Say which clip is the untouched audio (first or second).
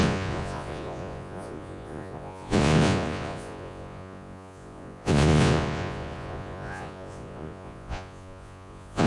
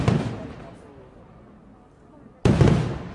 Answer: second